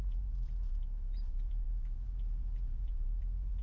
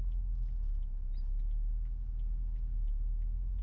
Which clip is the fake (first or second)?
first